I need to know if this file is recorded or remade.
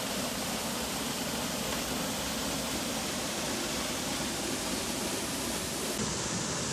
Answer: recorded